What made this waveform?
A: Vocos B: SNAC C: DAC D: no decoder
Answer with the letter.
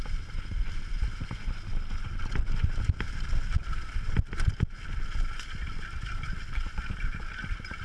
D